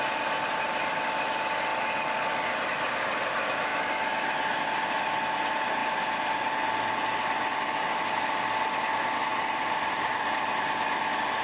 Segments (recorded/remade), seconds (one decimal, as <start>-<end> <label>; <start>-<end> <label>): 0.0-1.7 recorded; 1.7-2.3 remade; 2.3-9.3 recorded; 9.3-11.0 remade; 11.0-11.4 recorded